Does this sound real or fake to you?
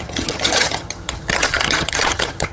fake